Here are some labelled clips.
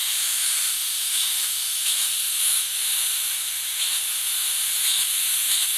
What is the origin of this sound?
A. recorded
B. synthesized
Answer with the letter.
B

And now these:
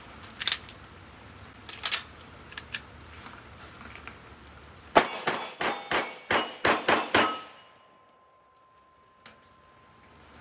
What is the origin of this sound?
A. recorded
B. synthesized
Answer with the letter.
A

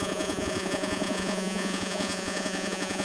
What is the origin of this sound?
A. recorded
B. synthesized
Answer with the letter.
B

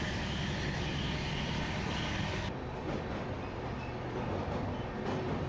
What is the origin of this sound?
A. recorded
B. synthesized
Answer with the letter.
A